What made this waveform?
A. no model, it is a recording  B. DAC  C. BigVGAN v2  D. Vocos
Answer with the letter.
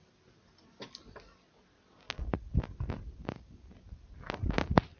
A